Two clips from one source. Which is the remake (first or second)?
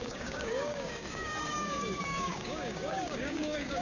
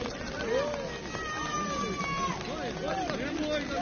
first